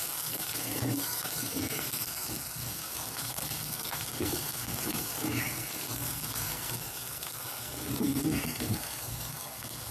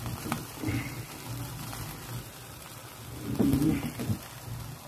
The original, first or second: second